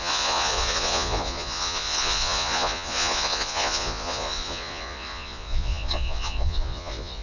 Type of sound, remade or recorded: remade